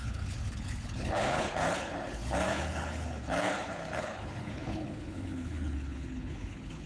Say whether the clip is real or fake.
fake